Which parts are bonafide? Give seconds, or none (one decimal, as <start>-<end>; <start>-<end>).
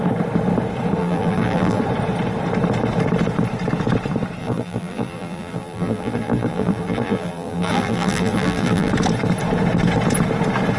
0.0-1.0; 1.8-4.4; 8.9-10.8